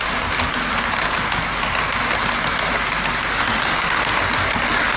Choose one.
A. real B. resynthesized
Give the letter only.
A